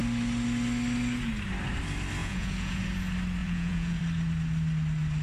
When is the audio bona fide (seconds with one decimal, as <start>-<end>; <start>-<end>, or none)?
0.0-2.2; 2.8-3.4; 4.0-5.2